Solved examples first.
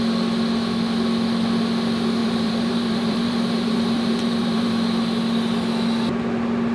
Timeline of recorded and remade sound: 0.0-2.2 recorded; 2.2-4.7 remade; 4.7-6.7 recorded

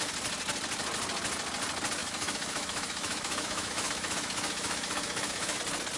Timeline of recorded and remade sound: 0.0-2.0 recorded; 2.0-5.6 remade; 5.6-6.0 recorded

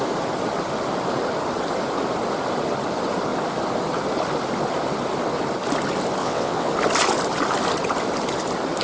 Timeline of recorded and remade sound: 0.0-6.2 recorded; 6.2-6.7 remade; 6.7-8.8 recorded